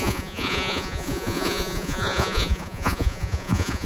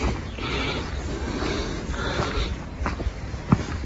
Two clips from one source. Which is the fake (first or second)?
first